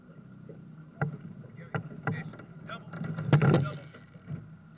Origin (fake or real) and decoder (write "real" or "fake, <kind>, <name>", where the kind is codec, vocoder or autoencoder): real